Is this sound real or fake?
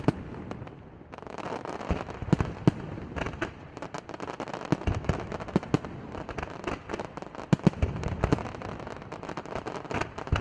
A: real